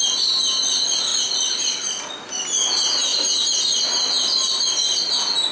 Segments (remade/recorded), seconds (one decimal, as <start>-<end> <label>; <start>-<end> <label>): 0.0-1.1 recorded; 1.1-2.1 remade; 2.1-5.5 recorded